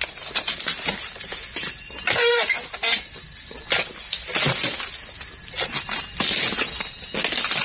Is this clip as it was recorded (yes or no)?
yes